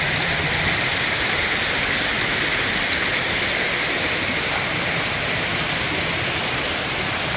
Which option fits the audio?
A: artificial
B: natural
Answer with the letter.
B